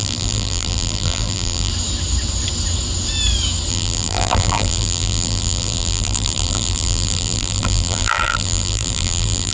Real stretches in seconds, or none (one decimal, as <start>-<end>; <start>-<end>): 1.7-3.7